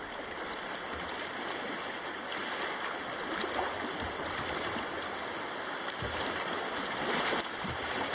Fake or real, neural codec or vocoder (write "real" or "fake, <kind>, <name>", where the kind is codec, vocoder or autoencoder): real